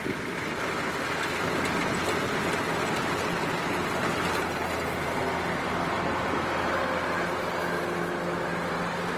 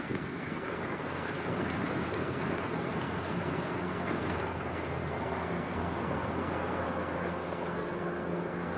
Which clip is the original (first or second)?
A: first